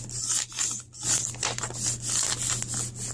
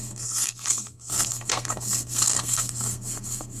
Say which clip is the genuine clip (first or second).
first